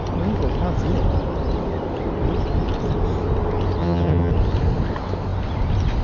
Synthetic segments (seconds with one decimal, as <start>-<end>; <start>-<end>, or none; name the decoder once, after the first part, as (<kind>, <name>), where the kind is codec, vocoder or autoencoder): 3.8-4.3 (vocoder, HiFi-GAN)

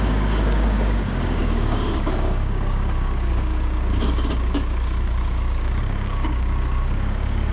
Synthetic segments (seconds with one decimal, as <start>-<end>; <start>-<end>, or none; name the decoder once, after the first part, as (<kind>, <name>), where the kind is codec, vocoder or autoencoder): 0.0-7.5 (codec, DAC)

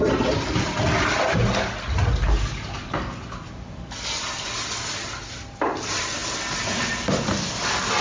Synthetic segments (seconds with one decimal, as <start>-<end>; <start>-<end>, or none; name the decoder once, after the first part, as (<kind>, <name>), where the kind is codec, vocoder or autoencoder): none

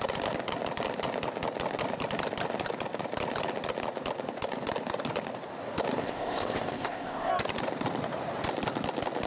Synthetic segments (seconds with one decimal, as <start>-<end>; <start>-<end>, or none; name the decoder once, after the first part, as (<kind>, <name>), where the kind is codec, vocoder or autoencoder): 6.0-7.3 (codec, ZipCodec)

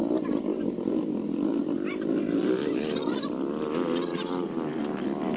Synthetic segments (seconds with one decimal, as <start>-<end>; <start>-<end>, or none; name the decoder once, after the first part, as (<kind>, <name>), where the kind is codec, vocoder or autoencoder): none

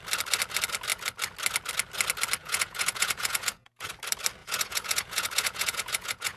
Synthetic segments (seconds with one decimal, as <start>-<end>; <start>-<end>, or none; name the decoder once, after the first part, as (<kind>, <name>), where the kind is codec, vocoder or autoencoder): 2.4-3.9 (vocoder, Vocos); 4.4-6.4

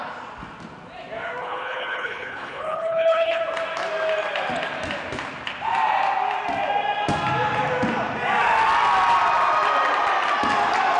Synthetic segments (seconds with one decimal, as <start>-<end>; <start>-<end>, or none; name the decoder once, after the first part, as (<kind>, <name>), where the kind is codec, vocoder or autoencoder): 1.4-3.4 (codec, HILCodec)

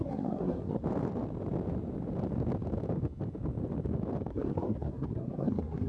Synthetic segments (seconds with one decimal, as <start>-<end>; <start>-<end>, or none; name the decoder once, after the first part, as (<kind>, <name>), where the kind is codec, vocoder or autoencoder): 0.0-0.8 (codec, SNAC); 4.3-5.9